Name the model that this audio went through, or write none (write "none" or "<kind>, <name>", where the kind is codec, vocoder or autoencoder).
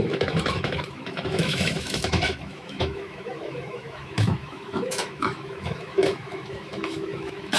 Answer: autoencoder, DAC-VAE